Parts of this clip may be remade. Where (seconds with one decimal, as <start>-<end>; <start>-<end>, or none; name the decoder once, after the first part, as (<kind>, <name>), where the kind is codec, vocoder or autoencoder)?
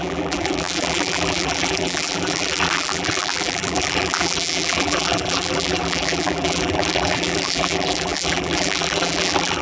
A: 0.0-9.6 (vocoder, BigVGAN v2)